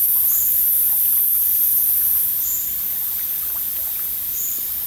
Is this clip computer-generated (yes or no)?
no